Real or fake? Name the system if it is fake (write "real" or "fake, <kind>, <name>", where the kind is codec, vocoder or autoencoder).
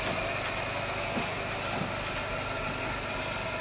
real